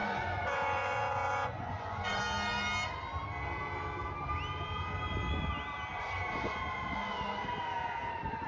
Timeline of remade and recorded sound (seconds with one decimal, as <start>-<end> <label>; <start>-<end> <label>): 0.0-2.2 remade; 2.2-5.9 recorded; 5.9-6.7 remade; 6.7-8.5 recorded